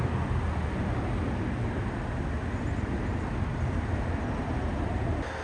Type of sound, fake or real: real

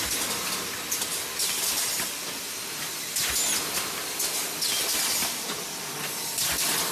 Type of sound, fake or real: real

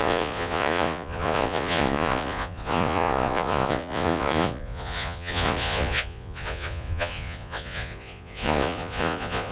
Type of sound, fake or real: fake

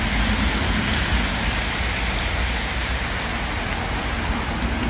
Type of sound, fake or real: real